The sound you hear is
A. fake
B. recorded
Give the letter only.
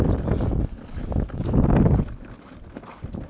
B